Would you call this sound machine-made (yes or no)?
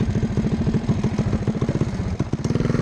no